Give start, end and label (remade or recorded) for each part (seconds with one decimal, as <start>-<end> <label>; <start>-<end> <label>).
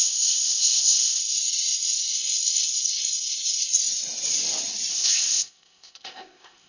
0.0-1.2 remade; 1.2-4.9 recorded; 4.9-6.7 remade